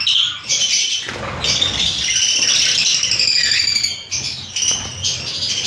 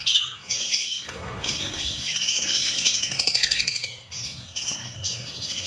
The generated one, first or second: second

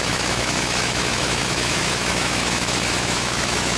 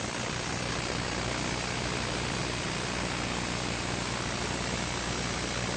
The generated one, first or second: first